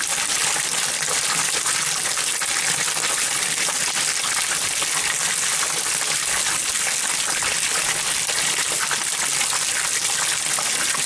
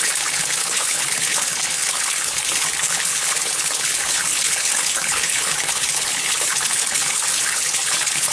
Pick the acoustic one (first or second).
first